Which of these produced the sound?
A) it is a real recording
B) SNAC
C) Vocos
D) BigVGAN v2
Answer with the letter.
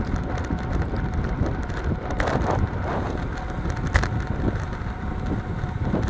D